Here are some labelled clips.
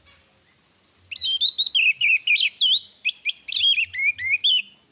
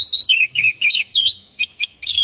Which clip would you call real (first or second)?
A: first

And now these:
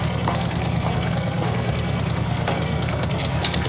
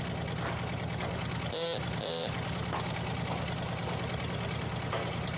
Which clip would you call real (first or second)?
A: second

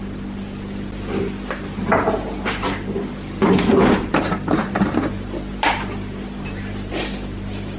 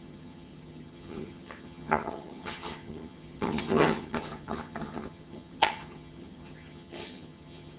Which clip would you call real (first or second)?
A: first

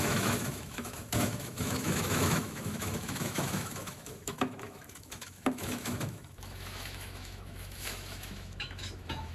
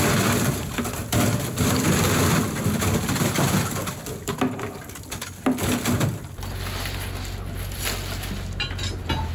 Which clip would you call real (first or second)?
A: second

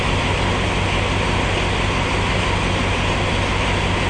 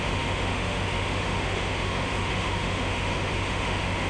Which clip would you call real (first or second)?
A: first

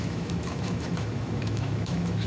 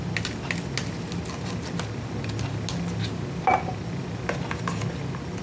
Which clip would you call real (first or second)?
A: second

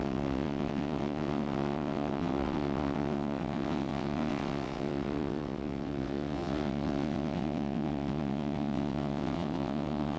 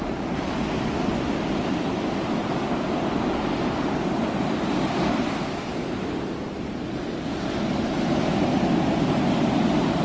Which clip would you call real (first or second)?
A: second